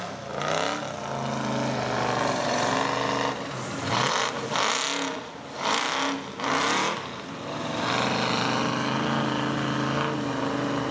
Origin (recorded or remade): recorded